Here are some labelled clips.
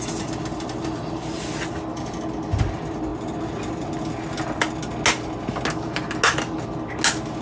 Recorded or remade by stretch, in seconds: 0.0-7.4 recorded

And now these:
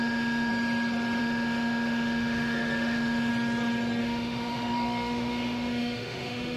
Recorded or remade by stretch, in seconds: 0.0-0.5 remade; 0.5-1.2 recorded; 1.2-3.3 remade; 3.3-4.0 recorded; 4.0-6.6 remade

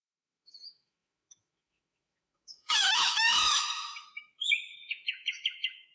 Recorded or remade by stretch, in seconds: 0.0-5.9 remade

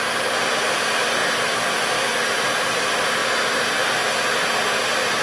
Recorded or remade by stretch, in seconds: 0.0-5.2 recorded

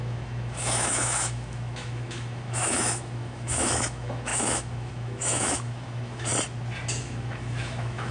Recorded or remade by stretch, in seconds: 0.0-6.3 remade; 6.3-7.0 recorded; 7.0-8.1 remade